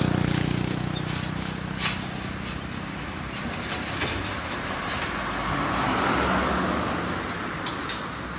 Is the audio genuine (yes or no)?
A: yes